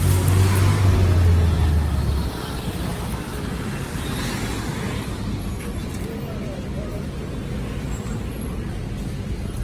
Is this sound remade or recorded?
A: recorded